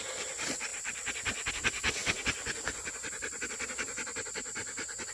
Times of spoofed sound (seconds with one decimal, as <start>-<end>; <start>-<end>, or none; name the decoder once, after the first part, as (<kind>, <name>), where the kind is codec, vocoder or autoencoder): none